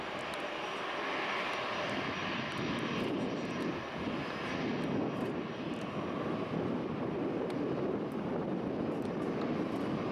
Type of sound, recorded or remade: recorded